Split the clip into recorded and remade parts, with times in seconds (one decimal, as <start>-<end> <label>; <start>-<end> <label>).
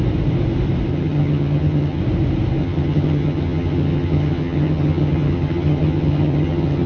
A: 0.0-0.9 recorded; 0.9-2.0 remade; 2.0-2.6 recorded; 2.6-6.9 remade